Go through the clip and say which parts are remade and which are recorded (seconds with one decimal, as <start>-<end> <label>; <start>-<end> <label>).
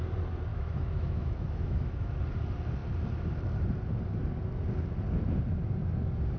0.0-0.5 recorded; 0.5-2.1 remade; 2.1-6.4 recorded